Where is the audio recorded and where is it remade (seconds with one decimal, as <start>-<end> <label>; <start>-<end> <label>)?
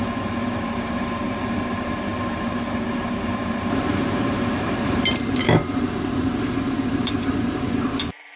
0.0-8.4 remade